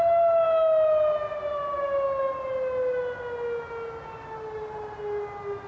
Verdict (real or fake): real